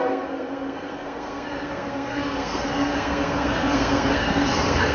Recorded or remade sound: remade